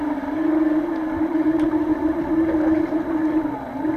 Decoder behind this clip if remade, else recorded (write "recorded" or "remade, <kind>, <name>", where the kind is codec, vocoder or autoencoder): recorded